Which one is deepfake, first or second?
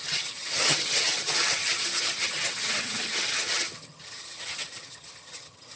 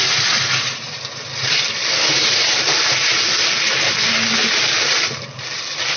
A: first